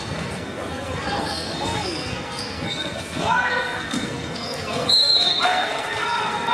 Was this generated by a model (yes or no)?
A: yes